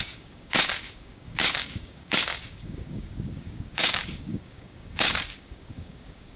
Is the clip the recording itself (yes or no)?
no